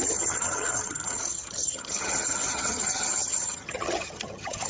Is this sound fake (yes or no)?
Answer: yes